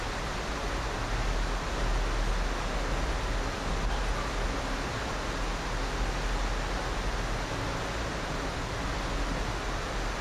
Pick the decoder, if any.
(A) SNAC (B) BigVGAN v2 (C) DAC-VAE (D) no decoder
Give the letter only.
D